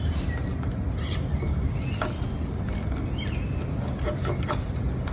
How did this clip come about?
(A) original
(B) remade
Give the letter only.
A